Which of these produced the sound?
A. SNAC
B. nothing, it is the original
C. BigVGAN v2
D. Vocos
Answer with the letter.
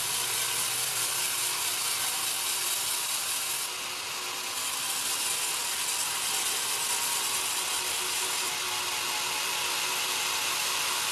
B